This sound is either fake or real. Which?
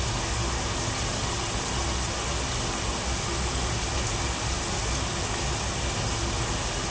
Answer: real